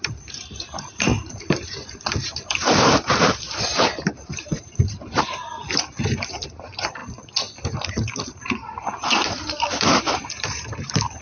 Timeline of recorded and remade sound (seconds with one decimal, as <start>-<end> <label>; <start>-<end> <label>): 0.0-7.0 remade; 7.0-7.9 recorded; 7.9-11.2 remade